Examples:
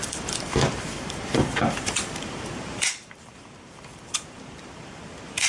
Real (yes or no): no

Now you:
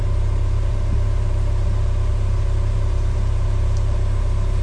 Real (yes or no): no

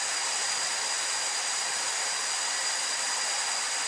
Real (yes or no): yes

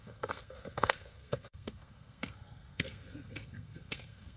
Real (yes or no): no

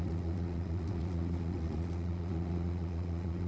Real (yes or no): no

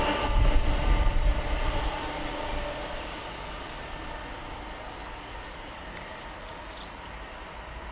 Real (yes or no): yes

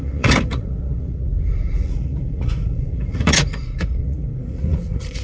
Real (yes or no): no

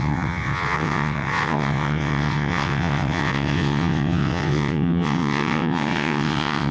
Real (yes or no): no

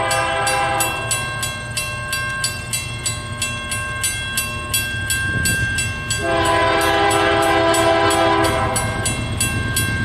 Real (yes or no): yes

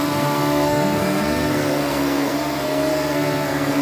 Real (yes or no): no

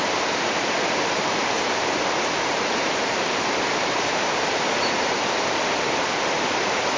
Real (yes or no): no